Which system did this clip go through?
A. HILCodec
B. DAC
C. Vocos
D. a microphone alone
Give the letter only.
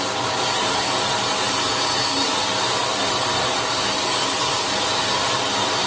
D